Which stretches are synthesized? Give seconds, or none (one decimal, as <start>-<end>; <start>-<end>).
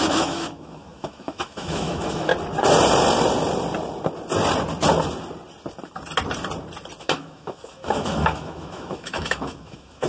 0.0-2.3; 7.0-10.1